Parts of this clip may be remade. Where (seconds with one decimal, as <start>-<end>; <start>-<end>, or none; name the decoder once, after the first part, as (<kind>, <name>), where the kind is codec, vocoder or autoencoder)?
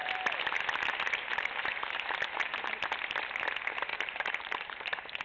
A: 1.3-2.1 (vocoder, BigVGAN v2); 3.9-5.2